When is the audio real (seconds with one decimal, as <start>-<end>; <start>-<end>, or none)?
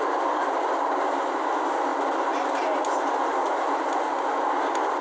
0.0-5.0